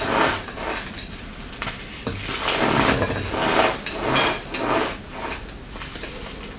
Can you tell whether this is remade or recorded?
recorded